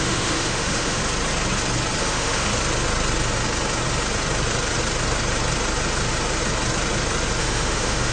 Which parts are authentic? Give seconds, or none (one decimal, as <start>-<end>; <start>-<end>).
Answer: 1.0-2.0; 2.5-7.4